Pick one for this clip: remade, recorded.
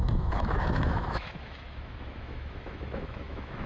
remade